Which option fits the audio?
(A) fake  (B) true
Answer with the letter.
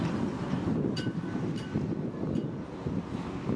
B